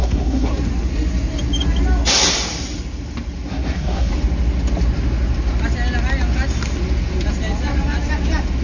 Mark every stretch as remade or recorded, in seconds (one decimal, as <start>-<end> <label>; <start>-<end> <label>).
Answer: 0.0-0.5 remade; 0.5-3.5 recorded; 3.5-4.1 remade; 4.1-8.6 recorded